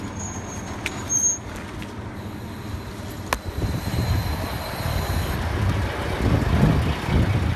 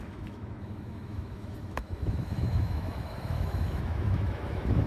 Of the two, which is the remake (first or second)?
second